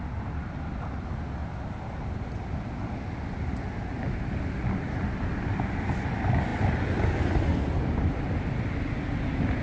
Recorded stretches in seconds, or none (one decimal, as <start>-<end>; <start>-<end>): 0.0-1.4; 2.6-9.6

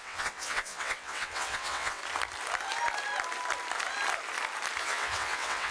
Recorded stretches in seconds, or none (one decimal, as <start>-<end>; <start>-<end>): 2.0-4.8

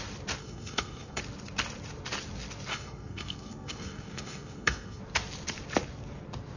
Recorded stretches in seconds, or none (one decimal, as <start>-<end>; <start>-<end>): 0.0-0.4; 1.2-2.7; 5.0-6.6

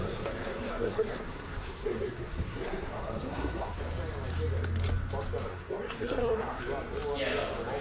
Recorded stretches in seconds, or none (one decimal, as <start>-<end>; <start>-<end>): 3.8-5.5; 6.6-7.8

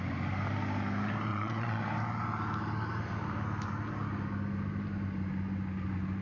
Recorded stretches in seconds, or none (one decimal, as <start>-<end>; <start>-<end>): 0.0-1.3; 1.8-6.2

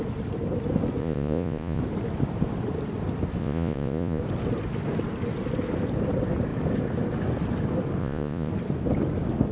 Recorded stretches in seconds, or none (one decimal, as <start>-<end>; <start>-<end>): 0.0-1.0; 1.8-3.4; 4.2-8.0; 8.5-9.5